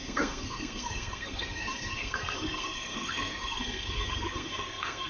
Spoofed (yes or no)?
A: yes